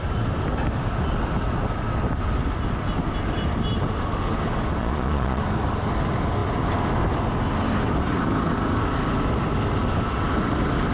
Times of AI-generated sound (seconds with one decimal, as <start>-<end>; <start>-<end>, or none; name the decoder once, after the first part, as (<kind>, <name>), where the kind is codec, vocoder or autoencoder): 4.8-5.4 (vocoder, Vocos)